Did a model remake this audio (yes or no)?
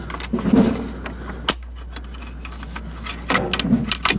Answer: no